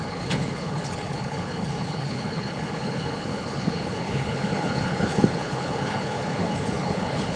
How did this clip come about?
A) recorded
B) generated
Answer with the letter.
B